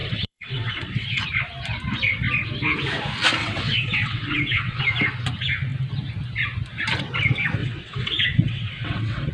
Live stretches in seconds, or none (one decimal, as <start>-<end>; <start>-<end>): 1.2-3.4; 4.8-7.6